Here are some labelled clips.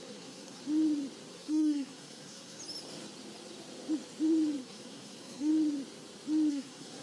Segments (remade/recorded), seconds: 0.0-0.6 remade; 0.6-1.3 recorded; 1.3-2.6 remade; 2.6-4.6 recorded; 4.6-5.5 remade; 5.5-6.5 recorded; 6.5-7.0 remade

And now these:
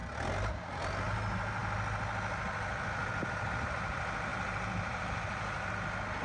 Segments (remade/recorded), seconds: 0.0-4.3 recorded; 4.3-5.7 remade; 5.7-6.2 recorded

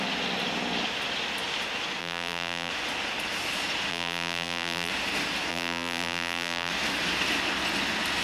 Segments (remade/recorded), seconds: 0.0-2.0 recorded; 2.0-2.7 remade; 2.7-3.9 recorded; 3.9-4.9 remade; 4.9-5.5 recorded; 5.5-6.7 remade; 6.7-8.2 recorded

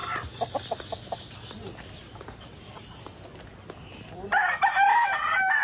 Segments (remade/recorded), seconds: 0.0-5.6 recorded